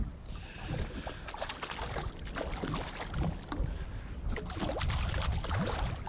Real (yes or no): yes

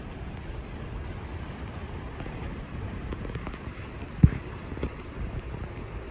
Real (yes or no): yes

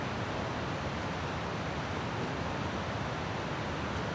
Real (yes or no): yes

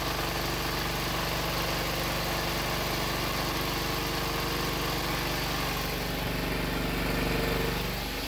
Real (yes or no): yes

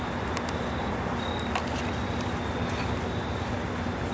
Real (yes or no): yes